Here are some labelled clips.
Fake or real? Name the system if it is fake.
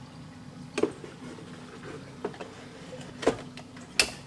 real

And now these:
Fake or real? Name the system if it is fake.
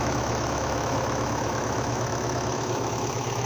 fake, autoencoder, DAC-VAE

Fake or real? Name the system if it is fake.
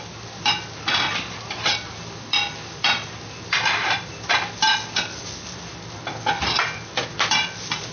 real